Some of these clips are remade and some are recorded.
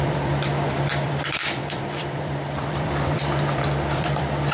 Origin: remade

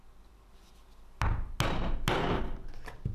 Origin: recorded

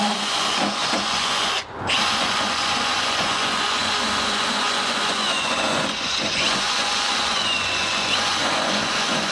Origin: remade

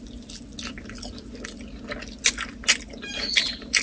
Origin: recorded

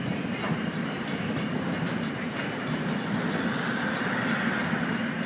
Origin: recorded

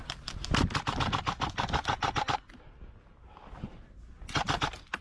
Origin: recorded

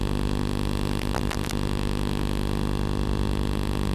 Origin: recorded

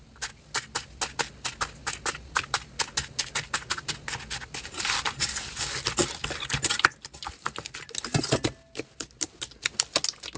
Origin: recorded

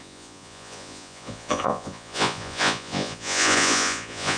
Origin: remade